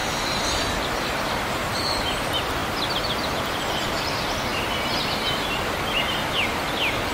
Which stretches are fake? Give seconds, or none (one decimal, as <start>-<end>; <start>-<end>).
none